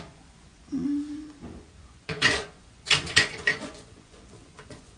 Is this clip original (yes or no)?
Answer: no